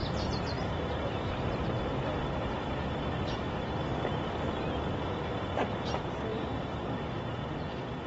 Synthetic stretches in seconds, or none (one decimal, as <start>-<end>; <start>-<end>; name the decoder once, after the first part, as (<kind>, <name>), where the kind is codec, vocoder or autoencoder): 0.0-2.0 (vocoder, BigVGAN v2); 6.3-7.3